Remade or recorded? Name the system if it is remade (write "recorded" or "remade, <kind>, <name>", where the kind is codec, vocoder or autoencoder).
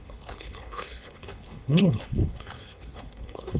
remade, codec, HILCodec